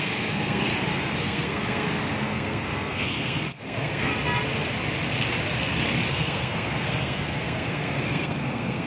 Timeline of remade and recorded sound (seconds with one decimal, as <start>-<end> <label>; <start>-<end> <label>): 0.0-0.7 remade; 0.7-1.2 recorded; 1.2-4.1 remade; 4.1-6.1 recorded; 6.1-8.9 remade